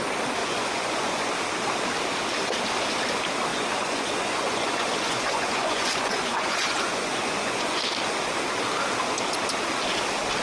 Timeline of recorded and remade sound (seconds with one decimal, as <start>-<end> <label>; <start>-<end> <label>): 0.0-0.4 recorded; 0.4-1.3 remade; 1.3-3.5 recorded; 3.5-7.8 remade; 7.8-10.4 recorded